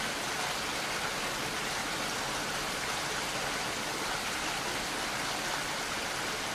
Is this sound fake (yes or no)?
no